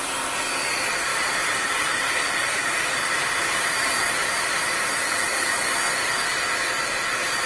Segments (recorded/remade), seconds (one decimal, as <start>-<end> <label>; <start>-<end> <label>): 0.0-1.1 recorded; 1.1-5.2 remade; 5.2-7.5 recorded